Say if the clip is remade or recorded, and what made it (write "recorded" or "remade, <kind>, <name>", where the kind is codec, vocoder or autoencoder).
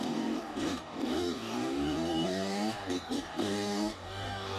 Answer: remade, codec, DAC